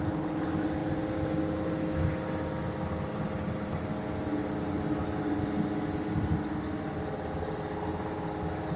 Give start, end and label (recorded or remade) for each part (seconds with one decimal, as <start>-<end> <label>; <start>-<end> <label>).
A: 0.0-8.8 recorded